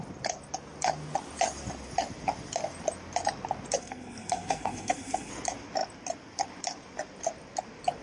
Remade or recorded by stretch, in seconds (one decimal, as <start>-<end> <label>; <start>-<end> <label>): 0.0-3.8 recorded; 3.8-5.3 remade; 5.3-8.0 recorded